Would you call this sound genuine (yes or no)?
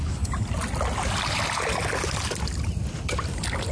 yes